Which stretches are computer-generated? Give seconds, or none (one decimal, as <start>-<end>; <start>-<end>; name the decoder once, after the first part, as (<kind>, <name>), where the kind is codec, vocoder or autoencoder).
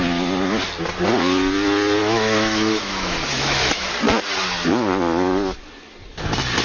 2.0-3.9 (autoencoder, DAC-VAE)